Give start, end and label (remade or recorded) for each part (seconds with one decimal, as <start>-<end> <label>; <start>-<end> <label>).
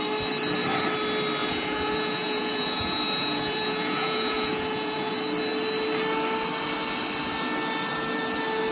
0.0-1.4 recorded; 1.4-5.1 remade; 5.1-8.7 recorded